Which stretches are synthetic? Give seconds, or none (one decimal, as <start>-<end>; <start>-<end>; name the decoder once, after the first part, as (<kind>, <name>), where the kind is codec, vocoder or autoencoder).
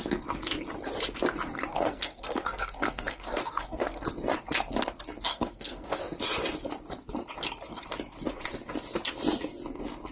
1.7-4.0 (codec, SNAC); 5.3-6.0